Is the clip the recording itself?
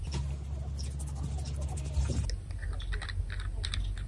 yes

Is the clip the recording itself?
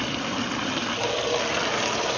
yes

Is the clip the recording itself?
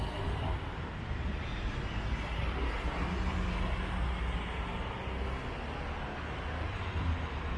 yes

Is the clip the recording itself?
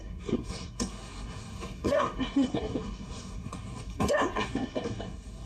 no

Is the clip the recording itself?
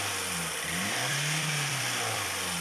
no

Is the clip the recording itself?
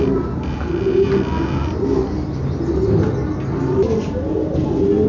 yes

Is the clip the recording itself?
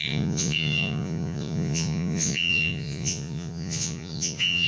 no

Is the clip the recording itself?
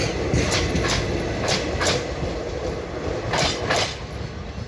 yes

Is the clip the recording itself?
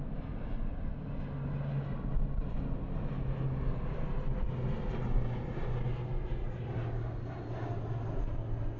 yes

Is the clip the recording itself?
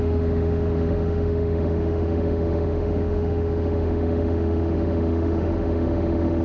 no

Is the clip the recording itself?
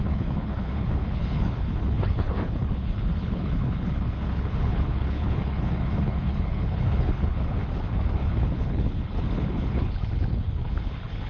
no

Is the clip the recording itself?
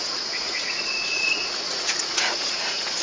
no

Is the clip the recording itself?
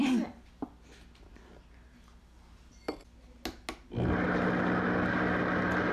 yes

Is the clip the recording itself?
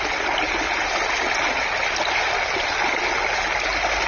yes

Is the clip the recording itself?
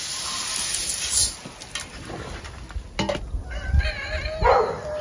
yes